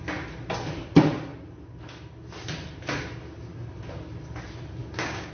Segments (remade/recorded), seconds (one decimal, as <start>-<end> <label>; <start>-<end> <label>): 0.0-4.8 recorded; 4.8-5.3 remade